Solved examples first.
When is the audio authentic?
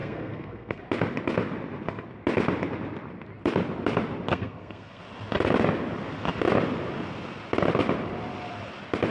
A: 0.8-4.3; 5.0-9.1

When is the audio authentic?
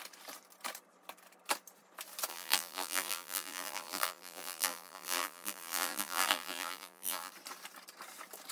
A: 0.0-2.3; 7.3-8.5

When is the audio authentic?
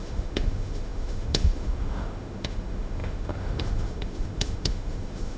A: none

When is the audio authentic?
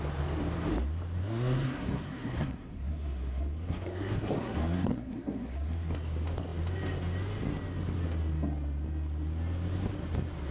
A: 0.0-1.2; 5.9-10.5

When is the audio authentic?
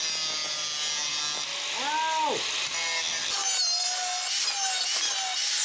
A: 0.0-5.6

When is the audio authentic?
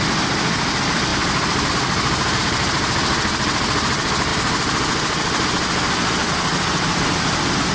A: 0.0-7.7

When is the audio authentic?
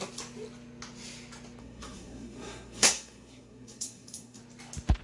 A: 0.0-1.6; 4.4-5.0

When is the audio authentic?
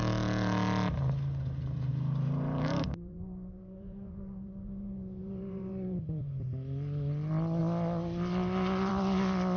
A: 0.0-1.9; 6.2-9.6